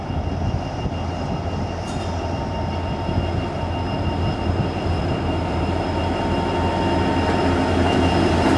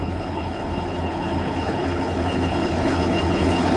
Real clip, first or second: first